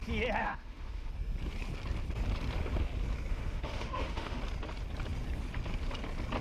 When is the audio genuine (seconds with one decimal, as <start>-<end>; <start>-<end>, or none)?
0.0-0.4; 1.1-3.3; 4.4-6.4